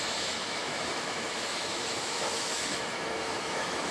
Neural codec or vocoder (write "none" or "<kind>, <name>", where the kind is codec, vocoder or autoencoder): autoencoder, DAC-VAE